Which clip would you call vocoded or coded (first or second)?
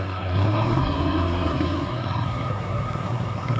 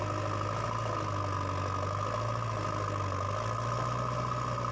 first